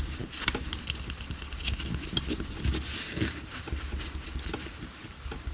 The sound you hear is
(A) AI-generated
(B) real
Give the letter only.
B